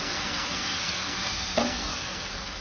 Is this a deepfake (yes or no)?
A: yes